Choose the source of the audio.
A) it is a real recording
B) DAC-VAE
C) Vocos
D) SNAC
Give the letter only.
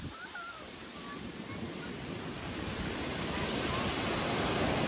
A